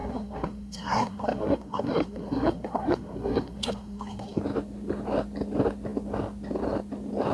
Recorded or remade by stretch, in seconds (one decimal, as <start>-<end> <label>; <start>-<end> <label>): 0.0-4.4 remade; 4.4-7.3 recorded